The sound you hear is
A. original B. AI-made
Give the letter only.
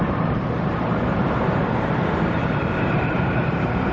B